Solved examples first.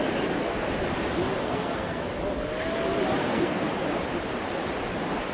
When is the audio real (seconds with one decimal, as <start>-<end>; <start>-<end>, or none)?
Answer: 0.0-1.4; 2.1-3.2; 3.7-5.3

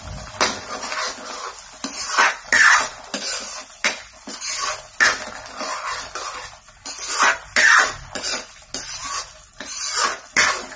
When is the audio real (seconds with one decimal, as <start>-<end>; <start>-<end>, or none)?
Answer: 0.0-10.8

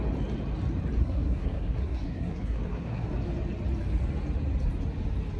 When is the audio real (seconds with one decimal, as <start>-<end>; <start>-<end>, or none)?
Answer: 0.0-1.0; 3.1-5.4